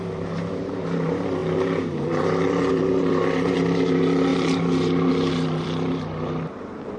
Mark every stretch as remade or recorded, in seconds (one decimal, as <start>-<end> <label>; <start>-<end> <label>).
0.0-7.0 remade